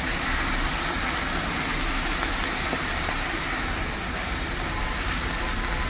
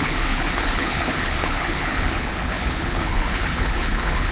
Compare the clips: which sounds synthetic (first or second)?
second